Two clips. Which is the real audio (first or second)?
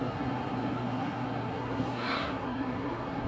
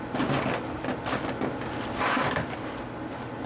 second